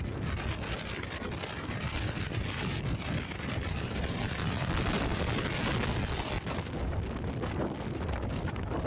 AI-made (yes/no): no